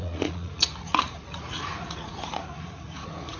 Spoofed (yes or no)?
yes